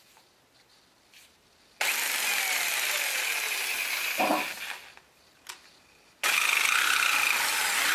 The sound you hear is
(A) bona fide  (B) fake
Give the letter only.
A